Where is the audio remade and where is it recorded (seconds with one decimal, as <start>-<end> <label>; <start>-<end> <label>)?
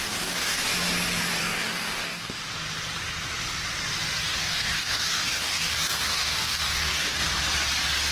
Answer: 0.0-0.7 remade; 0.7-1.4 recorded; 1.4-2.5 remade; 2.5-4.3 recorded; 4.3-7.3 remade; 7.3-8.1 recorded